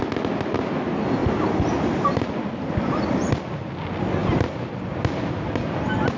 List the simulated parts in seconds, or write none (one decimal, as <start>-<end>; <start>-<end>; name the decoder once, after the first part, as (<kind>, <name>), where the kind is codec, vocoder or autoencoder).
none